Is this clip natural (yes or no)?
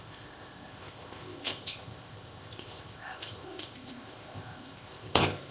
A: no